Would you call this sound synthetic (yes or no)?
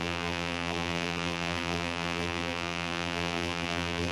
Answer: yes